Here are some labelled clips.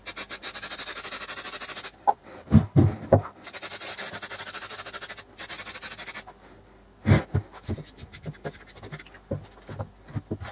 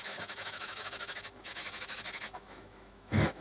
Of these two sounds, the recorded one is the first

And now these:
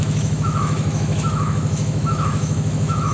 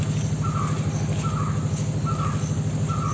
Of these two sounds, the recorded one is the second